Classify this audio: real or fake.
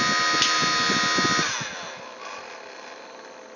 real